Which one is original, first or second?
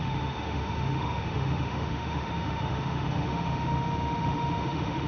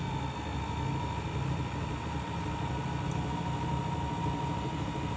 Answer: second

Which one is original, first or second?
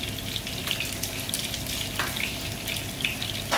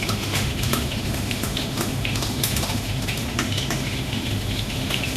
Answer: first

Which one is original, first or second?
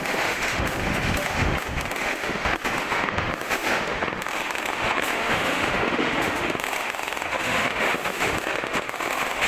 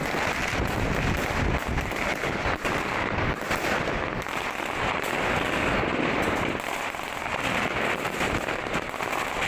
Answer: second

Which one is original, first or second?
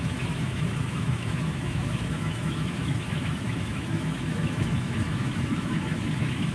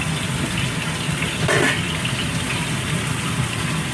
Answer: second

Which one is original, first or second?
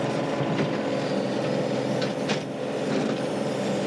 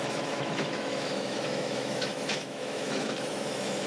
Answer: first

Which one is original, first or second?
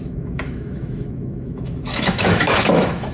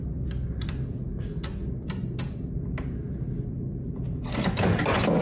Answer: second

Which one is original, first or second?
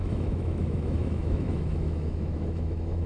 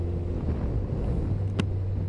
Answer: second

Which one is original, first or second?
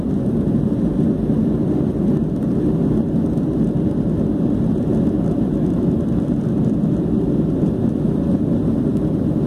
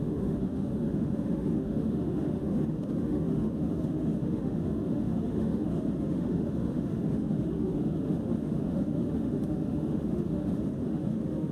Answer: first